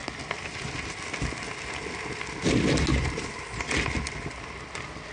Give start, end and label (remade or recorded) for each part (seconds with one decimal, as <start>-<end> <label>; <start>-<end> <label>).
0.0-5.1 recorded